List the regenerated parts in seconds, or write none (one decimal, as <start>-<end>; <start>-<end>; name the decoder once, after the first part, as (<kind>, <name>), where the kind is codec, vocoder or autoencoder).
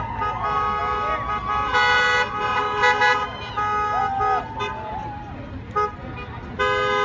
none